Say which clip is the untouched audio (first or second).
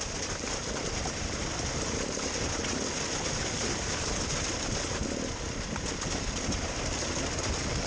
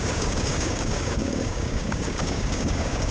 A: first